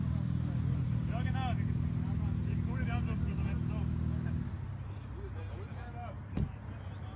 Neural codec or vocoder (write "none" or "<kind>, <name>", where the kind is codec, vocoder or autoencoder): none